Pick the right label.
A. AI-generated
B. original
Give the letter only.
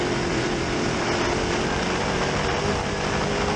B